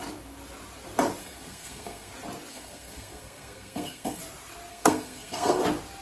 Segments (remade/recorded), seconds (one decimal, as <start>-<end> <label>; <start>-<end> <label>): 0.0-1.2 recorded; 1.2-2.1 remade; 2.1-2.5 recorded; 2.5-4.2 remade; 4.2-4.7 recorded; 4.7-5.6 remade; 5.6-6.0 recorded